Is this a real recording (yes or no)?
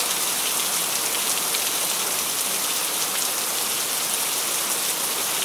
no